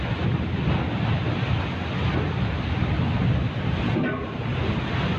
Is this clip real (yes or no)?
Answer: yes